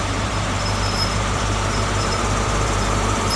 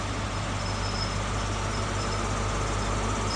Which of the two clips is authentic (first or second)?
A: second